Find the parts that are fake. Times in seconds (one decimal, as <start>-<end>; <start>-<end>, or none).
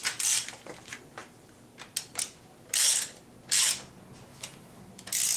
4.3-4.8